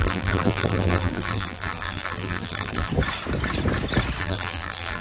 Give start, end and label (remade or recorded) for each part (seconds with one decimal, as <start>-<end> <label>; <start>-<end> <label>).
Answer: 0.0-2.9 remade; 2.9-4.2 recorded; 4.2-5.0 remade